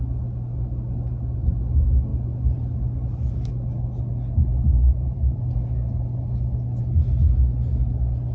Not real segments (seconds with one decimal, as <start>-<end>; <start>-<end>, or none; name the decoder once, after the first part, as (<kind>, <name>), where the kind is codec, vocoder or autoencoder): 4.9-5.4 (vocoder, BigVGAN v2)